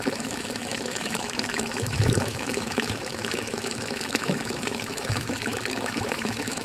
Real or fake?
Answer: fake